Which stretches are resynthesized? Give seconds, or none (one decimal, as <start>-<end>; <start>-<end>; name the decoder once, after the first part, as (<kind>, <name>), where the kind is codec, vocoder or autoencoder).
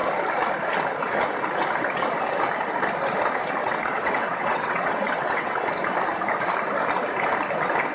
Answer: 3.6-5.7 (vocoder, WaveNeXt)